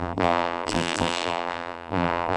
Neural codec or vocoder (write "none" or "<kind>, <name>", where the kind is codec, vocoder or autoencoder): vocoder, BigVGAN v2